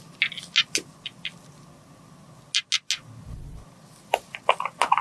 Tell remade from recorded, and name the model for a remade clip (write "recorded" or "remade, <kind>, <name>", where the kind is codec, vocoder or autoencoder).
recorded